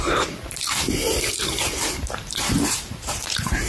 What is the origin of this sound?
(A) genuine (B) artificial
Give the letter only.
B